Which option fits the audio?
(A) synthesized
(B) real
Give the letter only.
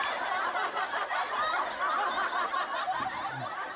B